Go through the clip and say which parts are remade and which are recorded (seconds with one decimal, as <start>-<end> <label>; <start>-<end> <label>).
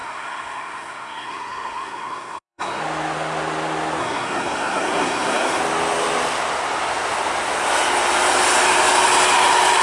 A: 0.0-2.8 remade; 2.8-4.0 recorded; 4.0-5.6 remade; 5.6-9.8 recorded